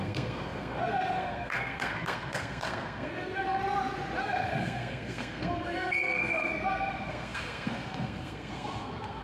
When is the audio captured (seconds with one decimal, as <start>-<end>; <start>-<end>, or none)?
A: 3.6-4.2